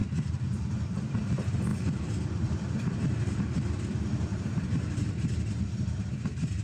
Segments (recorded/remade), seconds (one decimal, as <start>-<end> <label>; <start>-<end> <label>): 0.0-6.6 remade